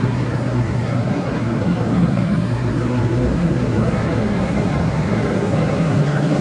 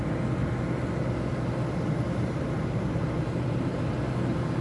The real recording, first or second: second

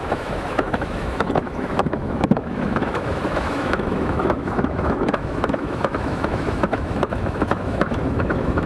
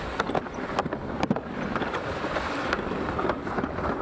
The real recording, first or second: second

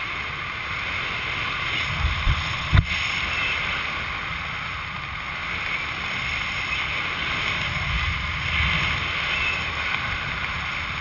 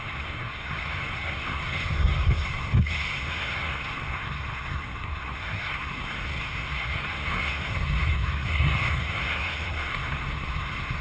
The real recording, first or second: first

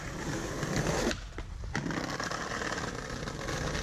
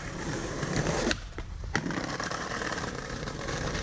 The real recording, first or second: first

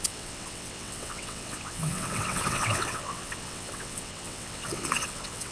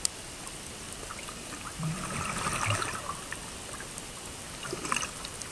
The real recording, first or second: second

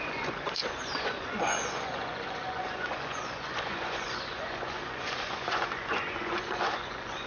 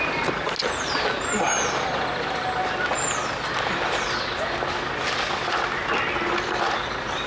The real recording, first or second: second